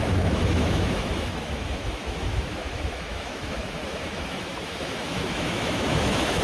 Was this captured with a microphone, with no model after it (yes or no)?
no